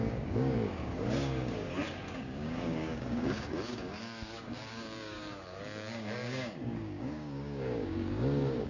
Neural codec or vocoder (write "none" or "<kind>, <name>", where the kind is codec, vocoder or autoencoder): codec, DAC